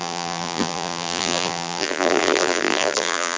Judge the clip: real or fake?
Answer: fake